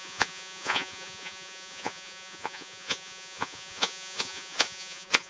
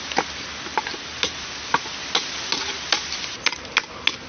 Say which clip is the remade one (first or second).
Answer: first